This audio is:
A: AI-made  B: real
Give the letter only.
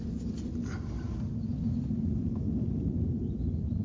B